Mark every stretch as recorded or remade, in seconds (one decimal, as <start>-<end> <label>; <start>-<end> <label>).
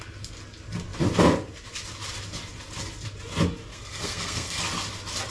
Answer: 0.0-3.7 recorded; 3.7-4.6 remade; 4.6-5.3 recorded